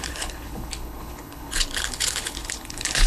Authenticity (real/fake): fake